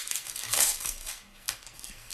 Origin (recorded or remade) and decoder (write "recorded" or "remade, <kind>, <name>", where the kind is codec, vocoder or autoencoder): remade, codec, SNAC